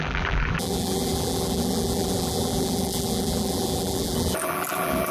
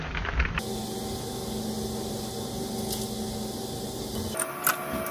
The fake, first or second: first